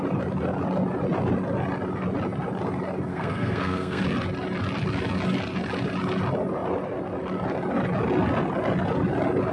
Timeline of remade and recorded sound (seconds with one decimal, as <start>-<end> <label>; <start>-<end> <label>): 0.0-3.1 recorded; 3.1-4.0 remade; 4.0-9.5 recorded

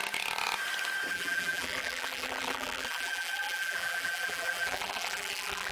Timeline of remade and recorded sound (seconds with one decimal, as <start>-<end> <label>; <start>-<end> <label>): 0.0-1.1 recorded; 1.1-5.7 remade

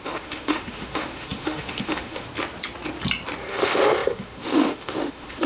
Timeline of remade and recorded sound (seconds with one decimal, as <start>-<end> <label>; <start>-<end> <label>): 0.0-2.3 remade; 2.3-3.5 recorded; 3.5-5.5 remade